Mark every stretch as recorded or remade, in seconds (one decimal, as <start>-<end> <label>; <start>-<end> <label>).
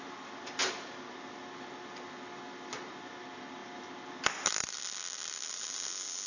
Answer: 0.0-6.3 recorded